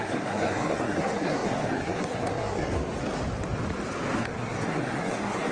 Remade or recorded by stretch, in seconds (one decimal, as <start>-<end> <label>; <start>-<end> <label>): 0.0-2.9 remade; 2.9-4.2 recorded; 4.2-5.5 remade